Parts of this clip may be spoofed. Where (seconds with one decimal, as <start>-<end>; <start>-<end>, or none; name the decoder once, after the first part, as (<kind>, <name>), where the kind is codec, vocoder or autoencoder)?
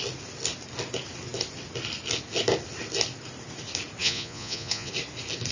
4.0-4.9 (vocoder, Vocos)